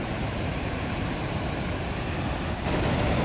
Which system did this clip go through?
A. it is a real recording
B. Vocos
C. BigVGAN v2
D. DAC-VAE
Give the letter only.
A